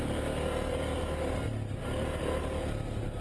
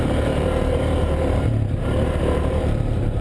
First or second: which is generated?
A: second